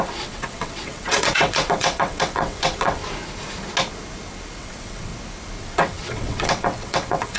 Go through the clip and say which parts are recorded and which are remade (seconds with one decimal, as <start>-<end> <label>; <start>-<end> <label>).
0.0-3.0 remade; 3.0-4.6 recorded; 4.6-5.1 remade; 5.1-5.6 recorded; 5.6-7.4 remade